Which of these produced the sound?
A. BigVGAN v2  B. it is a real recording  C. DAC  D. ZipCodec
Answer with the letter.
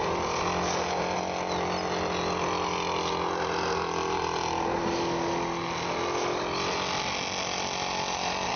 B